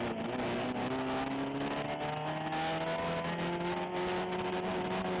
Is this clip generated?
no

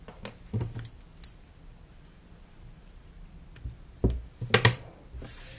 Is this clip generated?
no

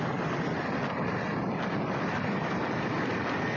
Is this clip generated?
no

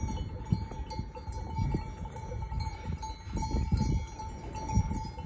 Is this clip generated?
no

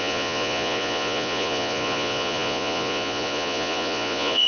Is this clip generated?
yes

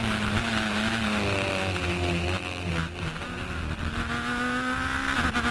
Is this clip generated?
no